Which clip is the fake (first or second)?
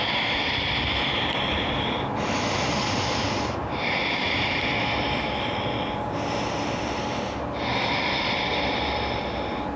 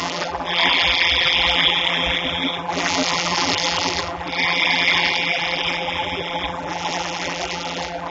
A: second